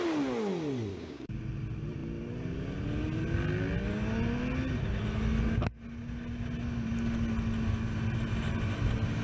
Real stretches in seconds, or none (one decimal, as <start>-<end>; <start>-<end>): 0.0-0.9; 1.4-9.2